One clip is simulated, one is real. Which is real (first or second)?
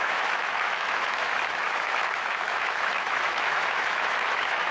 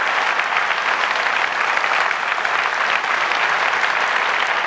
second